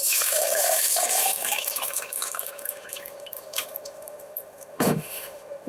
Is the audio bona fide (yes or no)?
no